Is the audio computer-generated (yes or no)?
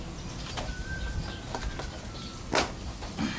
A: no